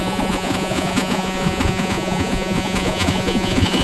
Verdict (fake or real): fake